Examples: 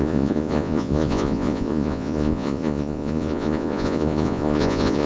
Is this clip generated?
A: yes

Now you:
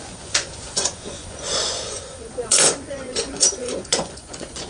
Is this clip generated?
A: yes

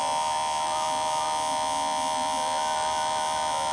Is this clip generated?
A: no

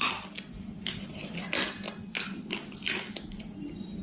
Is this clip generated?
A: no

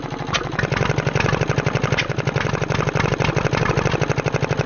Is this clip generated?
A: no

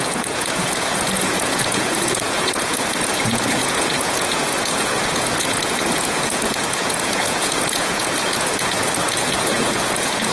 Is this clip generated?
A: yes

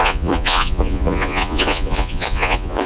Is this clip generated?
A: yes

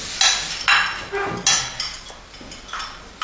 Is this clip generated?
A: no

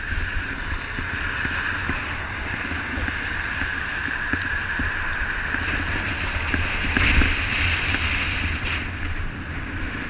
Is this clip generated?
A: no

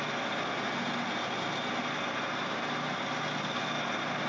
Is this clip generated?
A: no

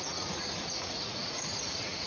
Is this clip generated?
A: yes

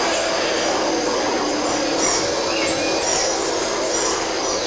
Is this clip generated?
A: no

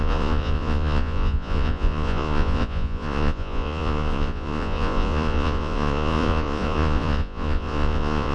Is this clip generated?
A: yes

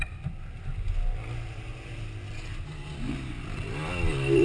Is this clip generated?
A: no